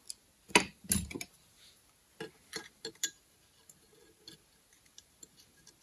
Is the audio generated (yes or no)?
no